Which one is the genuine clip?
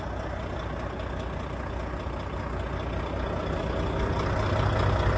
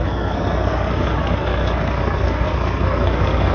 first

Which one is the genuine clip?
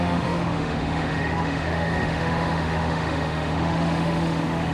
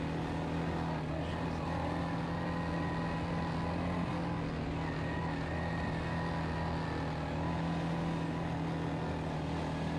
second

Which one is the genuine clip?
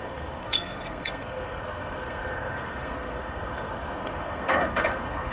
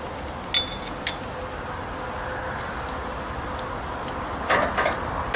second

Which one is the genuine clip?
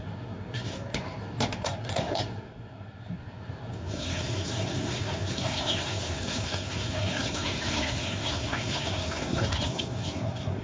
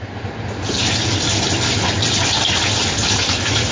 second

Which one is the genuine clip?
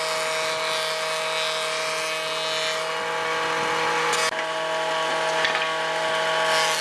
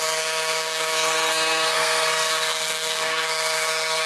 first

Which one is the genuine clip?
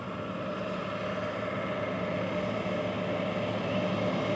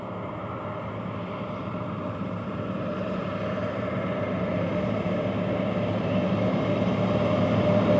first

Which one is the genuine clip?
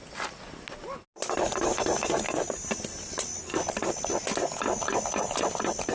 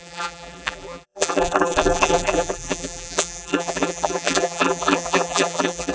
first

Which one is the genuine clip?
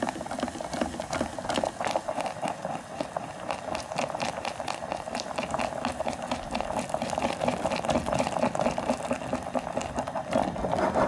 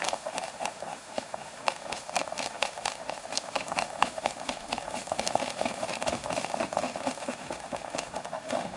first